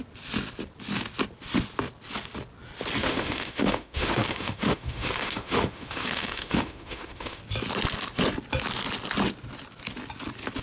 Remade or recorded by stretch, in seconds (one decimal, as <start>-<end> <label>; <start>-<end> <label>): 0.0-3.0 recorded; 3.0-7.4 remade; 7.4-10.6 recorded